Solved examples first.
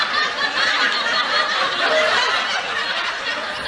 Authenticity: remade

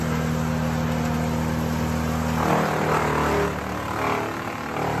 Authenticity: recorded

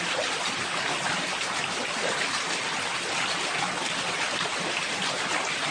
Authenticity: recorded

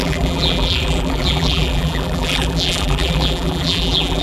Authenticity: remade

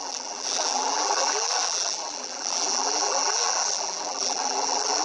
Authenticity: remade